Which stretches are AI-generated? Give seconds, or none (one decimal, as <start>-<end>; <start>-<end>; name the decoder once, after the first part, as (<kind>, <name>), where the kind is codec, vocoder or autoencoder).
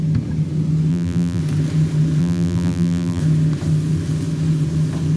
0.9-1.4 (vocoder, BigVGAN v2); 2.2-3.2